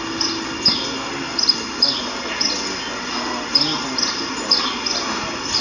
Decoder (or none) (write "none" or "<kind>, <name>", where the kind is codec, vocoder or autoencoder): none